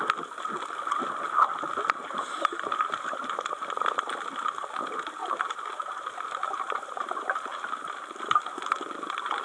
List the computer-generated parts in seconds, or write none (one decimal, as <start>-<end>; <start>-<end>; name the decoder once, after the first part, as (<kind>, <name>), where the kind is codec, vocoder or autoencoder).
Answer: 2.0-3.6 (vocoder, BigVGAN v2); 5.2-7.7